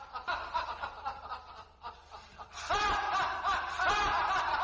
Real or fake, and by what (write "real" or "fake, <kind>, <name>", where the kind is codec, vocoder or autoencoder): fake, vocoder, BigVGAN v2